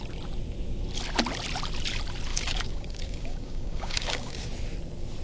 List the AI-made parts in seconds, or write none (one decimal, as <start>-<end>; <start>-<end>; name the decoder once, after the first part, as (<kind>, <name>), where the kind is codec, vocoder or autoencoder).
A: 2.3-4.5 (codec, DAC)